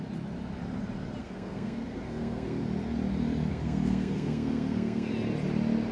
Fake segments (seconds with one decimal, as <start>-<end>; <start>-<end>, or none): 1.2-2.6; 3.5-5.1